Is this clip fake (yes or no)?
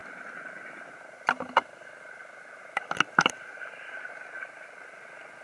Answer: no